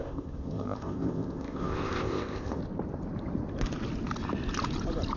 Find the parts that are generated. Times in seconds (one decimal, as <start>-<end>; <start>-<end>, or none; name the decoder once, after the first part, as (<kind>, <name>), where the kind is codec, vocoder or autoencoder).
0.0-2.6 (codec, ZipCodec)